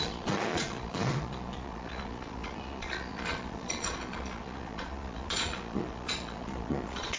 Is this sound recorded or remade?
remade